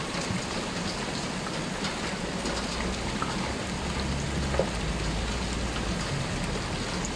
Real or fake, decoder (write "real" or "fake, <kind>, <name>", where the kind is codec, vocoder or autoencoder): real